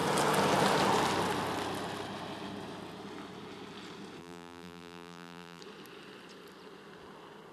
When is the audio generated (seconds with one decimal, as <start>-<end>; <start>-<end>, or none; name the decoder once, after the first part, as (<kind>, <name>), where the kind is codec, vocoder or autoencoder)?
4.2-5.6 (vocoder, BigVGAN v2)